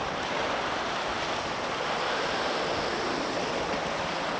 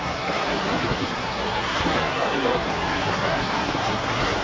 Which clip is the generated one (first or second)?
second